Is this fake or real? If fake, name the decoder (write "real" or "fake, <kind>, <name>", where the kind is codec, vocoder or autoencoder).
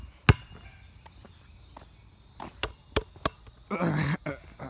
real